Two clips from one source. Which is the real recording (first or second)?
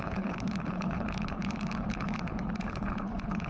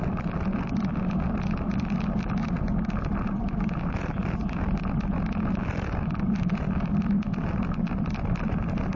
second